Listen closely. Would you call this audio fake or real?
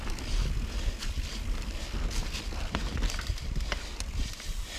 real